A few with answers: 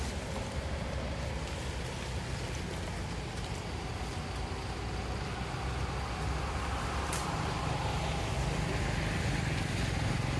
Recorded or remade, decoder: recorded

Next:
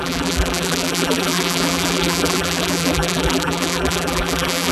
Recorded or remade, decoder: remade, vocoder, BigVGAN v2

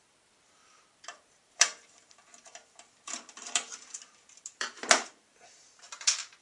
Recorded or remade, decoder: remade, vocoder, BigVGAN v2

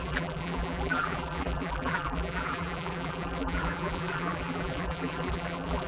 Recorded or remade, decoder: remade, vocoder, BigVGAN v2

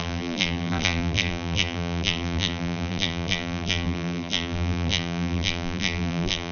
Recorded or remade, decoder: remade, vocoder, BigVGAN v2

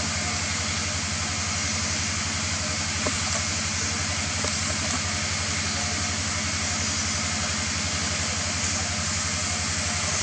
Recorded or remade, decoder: recorded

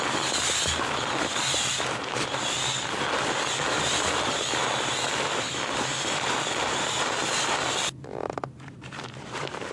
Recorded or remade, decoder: remade, vocoder, BigVGAN v2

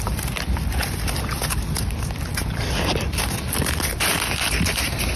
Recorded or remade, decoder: remade, vocoder, BigVGAN v2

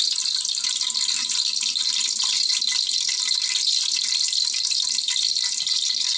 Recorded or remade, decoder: remade, vocoder, BigVGAN v2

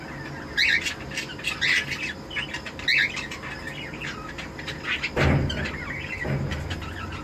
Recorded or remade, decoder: recorded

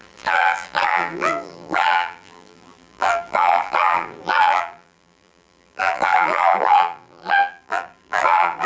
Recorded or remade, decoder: remade, vocoder, BigVGAN v2